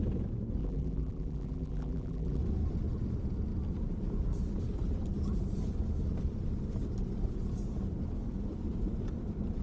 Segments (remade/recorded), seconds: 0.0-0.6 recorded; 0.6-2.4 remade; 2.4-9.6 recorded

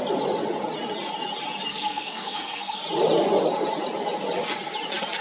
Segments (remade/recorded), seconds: 0.0-1.7 recorded; 1.7-2.8 remade; 2.8-5.2 recorded